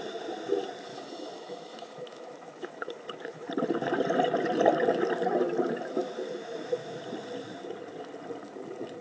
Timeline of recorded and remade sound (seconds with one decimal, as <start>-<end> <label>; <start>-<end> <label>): 0.0-0.9 recorded; 0.9-3.5 remade; 3.5-6.0 recorded; 6.0-7.0 remade; 7.0-9.0 recorded